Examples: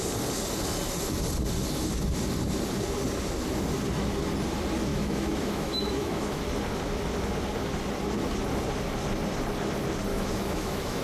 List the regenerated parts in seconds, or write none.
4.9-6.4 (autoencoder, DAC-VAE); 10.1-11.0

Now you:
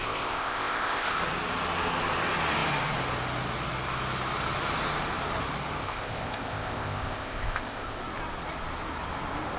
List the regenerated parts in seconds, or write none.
0.0-1.2 (codec, ZipCodec); 5.8-8.0